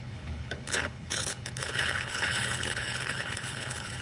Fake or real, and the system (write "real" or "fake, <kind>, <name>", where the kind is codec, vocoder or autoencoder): fake, codec, HILCodec